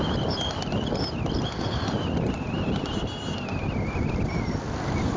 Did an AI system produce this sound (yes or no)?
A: no